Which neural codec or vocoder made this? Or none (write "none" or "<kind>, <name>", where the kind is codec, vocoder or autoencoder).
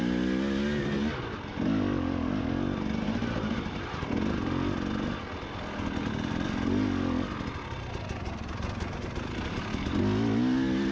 none